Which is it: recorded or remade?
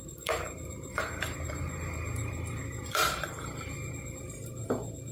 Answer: remade